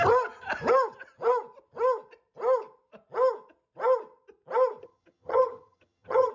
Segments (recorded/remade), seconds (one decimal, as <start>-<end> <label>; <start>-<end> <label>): 0.0-4.8 recorded; 4.8-6.3 remade